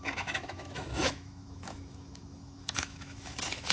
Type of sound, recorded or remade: remade